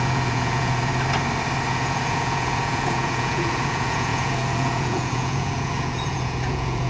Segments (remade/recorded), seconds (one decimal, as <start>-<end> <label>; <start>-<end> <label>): 0.0-0.9 remade; 0.9-1.7 recorded; 1.7-6.9 remade